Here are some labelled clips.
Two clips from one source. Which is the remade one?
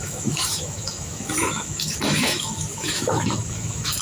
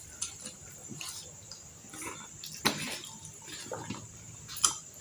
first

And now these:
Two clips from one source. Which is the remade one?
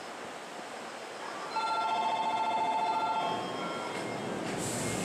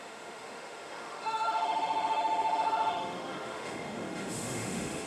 second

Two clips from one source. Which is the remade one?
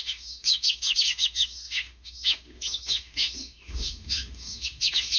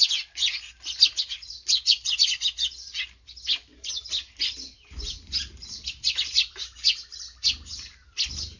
first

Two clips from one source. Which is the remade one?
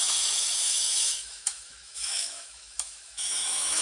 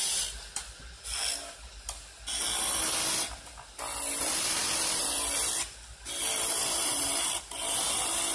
first